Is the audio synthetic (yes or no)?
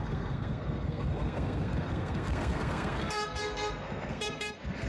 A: yes